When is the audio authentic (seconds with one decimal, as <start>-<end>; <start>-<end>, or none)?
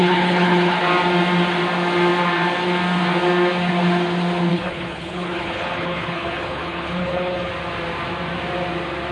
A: 0.8-4.5; 7.5-9.1